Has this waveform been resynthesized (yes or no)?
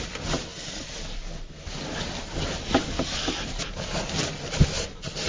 no